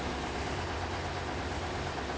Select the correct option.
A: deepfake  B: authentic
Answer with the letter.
B